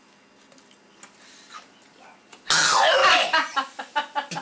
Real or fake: real